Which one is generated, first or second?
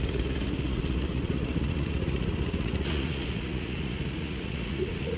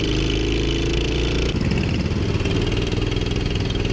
first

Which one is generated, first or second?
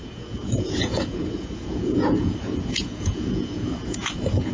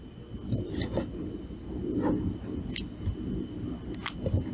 first